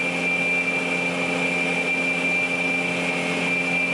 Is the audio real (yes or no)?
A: yes